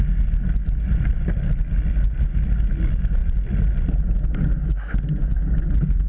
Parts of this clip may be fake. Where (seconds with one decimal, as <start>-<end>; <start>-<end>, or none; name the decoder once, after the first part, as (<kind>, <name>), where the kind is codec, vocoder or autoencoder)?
none